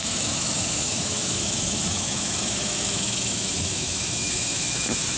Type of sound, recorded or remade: remade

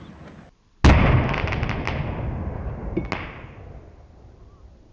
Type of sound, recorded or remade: recorded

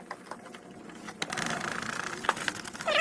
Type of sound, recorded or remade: recorded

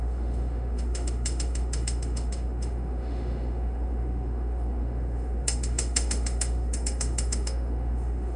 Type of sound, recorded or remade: remade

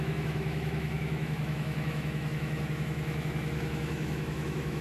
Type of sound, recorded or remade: remade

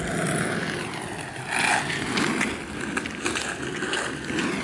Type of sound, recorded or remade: recorded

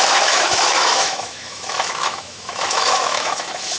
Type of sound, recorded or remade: remade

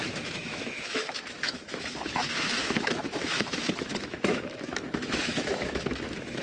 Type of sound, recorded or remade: remade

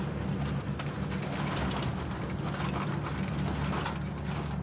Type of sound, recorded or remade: recorded